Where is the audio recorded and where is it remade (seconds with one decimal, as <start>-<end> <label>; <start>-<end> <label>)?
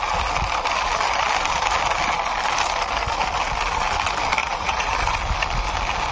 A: 0.0-4.4 recorded; 4.4-4.9 remade; 4.9-6.1 recorded